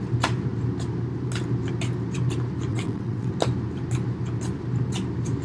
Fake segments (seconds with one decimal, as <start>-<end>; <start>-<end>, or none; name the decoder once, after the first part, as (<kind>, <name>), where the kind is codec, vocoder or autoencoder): 2.7-3.3 (vocoder, WaveNeXt)

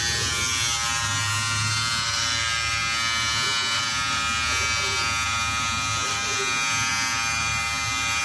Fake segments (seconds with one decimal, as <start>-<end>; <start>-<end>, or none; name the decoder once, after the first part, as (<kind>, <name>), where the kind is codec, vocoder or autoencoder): none